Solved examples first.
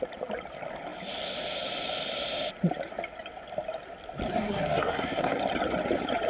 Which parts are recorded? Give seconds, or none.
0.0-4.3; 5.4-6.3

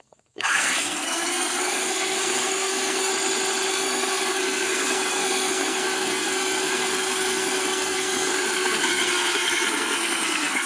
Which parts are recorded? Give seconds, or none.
3.1-3.7

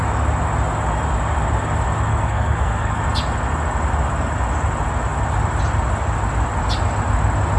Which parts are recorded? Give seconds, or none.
0.0-2.1; 3.0-7.6

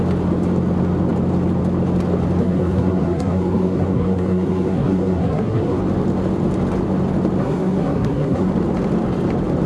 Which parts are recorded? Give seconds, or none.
0.0-2.4; 5.8-7.4; 8.5-9.7

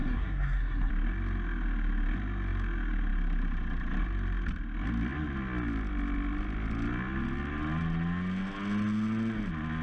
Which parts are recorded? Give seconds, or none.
0.9-9.8

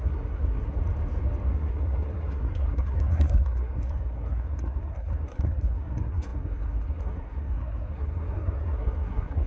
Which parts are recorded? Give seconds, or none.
0.8-1.5

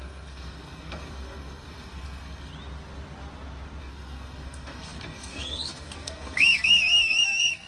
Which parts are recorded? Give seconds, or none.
2.5-3.8